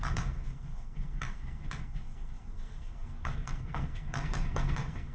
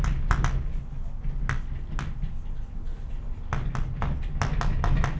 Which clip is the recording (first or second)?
second